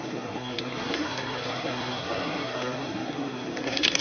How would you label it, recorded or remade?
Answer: remade